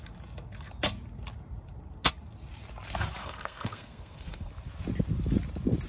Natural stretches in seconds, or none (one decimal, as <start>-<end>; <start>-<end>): 0.0-3.2; 4.5-5.9